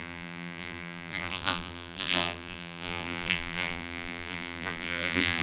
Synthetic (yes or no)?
yes